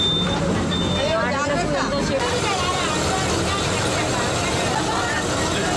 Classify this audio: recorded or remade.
recorded